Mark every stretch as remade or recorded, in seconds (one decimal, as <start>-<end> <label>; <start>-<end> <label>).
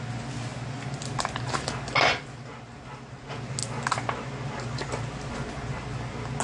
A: 0.0-6.4 recorded